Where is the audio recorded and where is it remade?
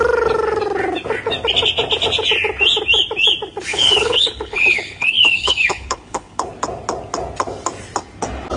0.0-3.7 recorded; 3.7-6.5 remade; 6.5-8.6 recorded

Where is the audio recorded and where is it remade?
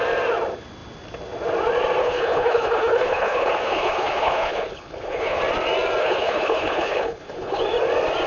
0.0-2.0 recorded; 2.0-5.4 remade; 5.4-6.0 recorded; 6.0-7.6 remade; 7.6-8.3 recorded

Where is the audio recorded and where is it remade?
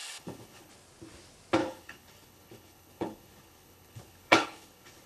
0.0-0.7 remade; 0.7-1.6 recorded; 1.6-5.1 remade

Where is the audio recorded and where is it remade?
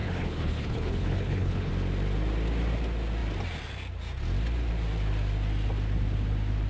0.0-1.7 remade; 1.7-6.7 recorded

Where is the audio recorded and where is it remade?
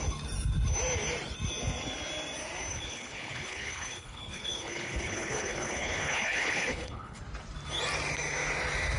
0.0-2.7 recorded; 2.7-7.2 remade; 7.2-9.0 recorded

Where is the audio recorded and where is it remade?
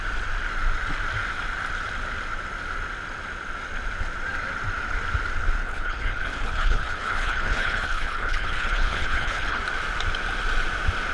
0.0-5.6 recorded; 5.6-9.6 remade; 9.6-11.1 recorded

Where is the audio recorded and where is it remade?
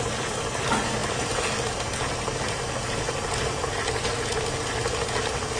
0.0-5.6 recorded